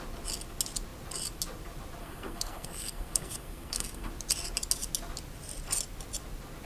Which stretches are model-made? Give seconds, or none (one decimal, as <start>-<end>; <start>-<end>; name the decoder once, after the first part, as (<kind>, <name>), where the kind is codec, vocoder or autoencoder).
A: 2.0-4.1 (codec, SNAC)